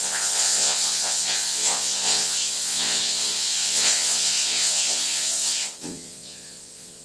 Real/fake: fake